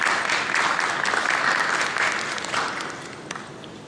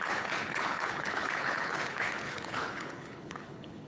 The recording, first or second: first